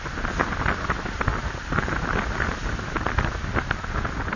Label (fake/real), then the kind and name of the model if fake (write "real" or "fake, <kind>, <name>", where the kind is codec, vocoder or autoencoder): real